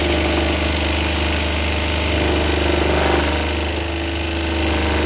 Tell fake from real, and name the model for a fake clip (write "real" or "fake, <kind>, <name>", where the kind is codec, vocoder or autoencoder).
real